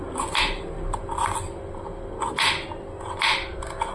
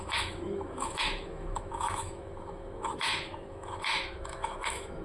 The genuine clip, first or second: first